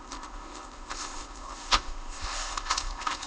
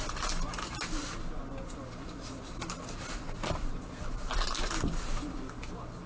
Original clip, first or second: second